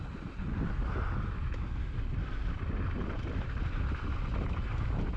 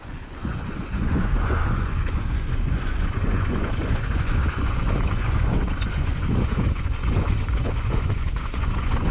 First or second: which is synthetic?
second